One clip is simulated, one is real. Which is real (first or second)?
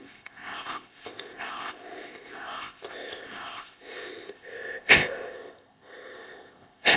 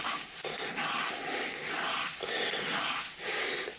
second